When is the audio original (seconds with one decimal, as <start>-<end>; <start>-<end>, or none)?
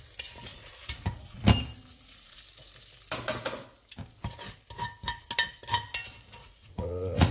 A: 0.0-0.5; 1.4-1.9; 2.4-6.4